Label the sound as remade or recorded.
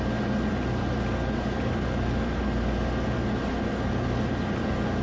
recorded